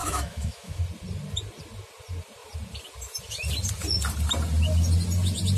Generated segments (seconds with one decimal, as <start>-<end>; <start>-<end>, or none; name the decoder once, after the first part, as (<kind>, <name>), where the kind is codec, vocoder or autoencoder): 0.0-0.8 (autoencoder, DAC-VAE)

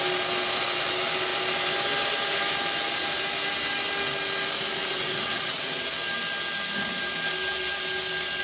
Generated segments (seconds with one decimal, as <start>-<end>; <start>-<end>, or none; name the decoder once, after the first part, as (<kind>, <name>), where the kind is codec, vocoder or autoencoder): 4.8-5.8 (vocoder, WaveNeXt)

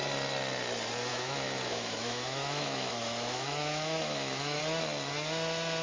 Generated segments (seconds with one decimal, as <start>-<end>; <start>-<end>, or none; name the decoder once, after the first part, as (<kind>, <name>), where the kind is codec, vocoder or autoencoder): 1.1-4.6 (autoencoder, DAC-VAE)